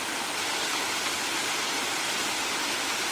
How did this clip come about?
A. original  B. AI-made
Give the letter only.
A